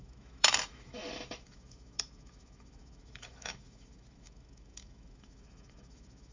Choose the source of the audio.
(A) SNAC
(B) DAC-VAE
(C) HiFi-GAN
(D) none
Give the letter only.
B